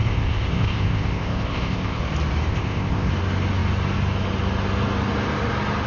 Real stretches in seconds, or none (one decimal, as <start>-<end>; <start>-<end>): 2.0-2.5; 3.1-5.9